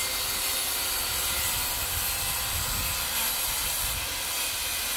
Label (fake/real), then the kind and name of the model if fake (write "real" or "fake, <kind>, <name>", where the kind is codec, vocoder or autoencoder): fake, vocoder, BigVGAN v2